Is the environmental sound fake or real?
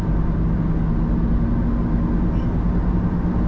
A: real